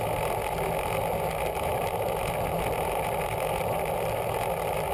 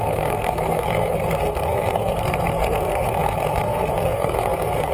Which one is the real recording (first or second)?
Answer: first